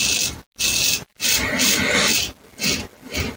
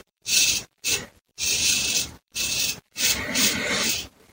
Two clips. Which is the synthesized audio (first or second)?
second